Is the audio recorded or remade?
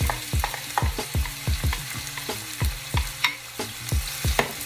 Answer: recorded